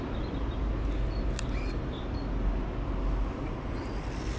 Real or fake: real